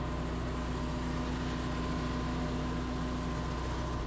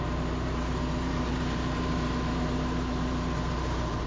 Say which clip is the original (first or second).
first